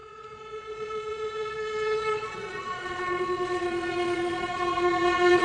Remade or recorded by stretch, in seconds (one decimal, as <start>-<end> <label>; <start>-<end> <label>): 0.0-5.4 remade

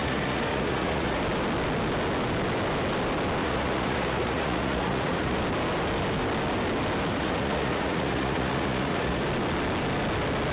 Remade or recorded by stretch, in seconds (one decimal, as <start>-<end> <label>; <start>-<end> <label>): 0.0-1.2 remade; 1.2-3.4 recorded; 3.4-5.4 remade; 5.4-7.1 recorded; 7.1-9.2 remade; 9.2-10.5 recorded

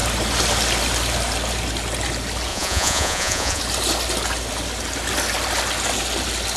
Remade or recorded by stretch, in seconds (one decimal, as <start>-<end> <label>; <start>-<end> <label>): 0.0-2.5 recorded; 2.5-3.6 remade; 3.6-6.6 recorded

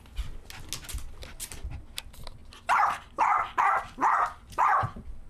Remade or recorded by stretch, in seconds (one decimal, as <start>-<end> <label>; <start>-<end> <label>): 0.0-5.3 recorded

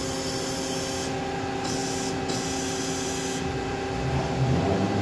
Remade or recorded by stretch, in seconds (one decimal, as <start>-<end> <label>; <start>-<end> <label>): 0.0-5.0 recorded

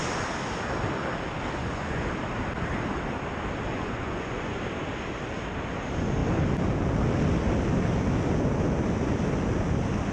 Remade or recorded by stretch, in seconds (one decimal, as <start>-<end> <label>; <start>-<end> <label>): 0.0-1.6 recorded; 1.6-2.1 remade; 2.1-3.7 recorded; 3.7-4.6 remade; 4.6-10.1 recorded

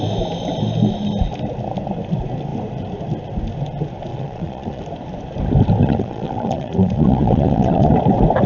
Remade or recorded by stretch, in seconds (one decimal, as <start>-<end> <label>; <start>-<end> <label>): 0.0-4.1 recorded; 4.1-4.8 remade; 4.8-5.8 recorded; 5.8-7.9 remade; 7.9-8.5 recorded

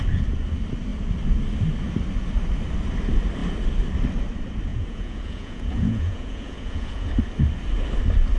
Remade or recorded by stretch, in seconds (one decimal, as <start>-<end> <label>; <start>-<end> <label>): 0.0-4.7 recorded; 4.7-7.1 remade; 7.1-8.4 recorded